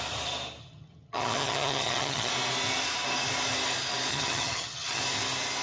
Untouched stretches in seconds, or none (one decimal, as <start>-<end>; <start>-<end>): 0.0-0.6; 2.3-4.1; 5.0-5.6